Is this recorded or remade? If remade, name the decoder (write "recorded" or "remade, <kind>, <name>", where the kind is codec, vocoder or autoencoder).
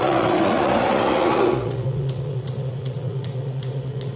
remade, vocoder, Vocos